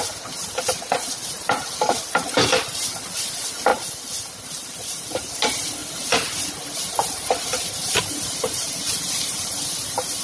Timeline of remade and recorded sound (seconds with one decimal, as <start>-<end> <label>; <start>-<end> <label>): 0.0-10.2 recorded